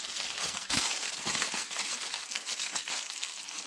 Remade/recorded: remade